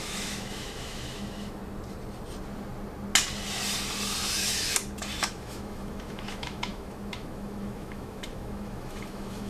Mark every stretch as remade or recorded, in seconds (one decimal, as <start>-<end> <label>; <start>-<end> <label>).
0.0-1.6 remade; 1.6-5.3 recorded; 5.3-9.5 remade